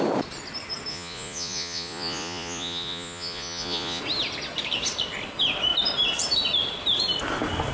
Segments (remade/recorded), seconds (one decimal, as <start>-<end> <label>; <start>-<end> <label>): 0.0-0.9 recorded; 0.9-4.0 remade; 4.0-7.7 recorded